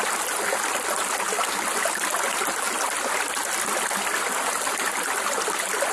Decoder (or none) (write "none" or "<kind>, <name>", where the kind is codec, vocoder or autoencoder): none